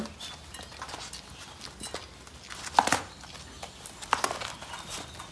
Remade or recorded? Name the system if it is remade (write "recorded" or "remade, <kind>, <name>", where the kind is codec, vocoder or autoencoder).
recorded